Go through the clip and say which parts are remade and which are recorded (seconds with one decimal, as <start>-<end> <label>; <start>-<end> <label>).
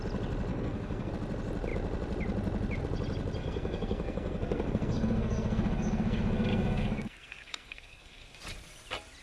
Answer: 0.0-0.5 recorded; 0.5-1.1 remade; 1.1-3.4 recorded; 3.4-8.4 remade; 8.4-9.2 recorded